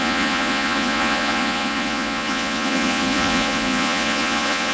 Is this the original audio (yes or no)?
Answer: no